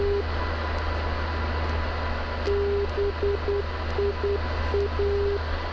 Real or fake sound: real